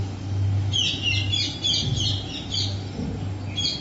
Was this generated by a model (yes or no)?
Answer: no